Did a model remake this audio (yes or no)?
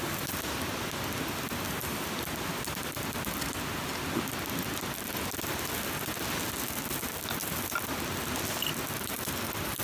no